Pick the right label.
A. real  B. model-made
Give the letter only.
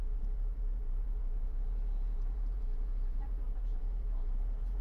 B